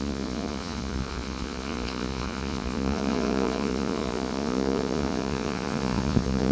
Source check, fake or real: fake